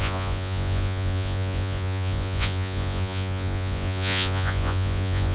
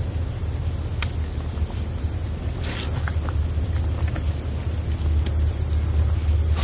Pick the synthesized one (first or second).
first